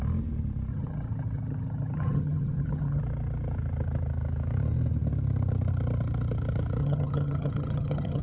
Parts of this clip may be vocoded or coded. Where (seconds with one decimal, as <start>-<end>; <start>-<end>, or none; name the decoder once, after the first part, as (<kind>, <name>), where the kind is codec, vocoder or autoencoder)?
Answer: 0.7-3.0 (vocoder, HiFi-GAN); 6.8-8.2